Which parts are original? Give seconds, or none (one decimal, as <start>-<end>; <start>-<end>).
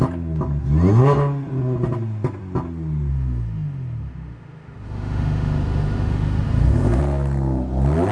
0.0-3.1; 7.0-8.1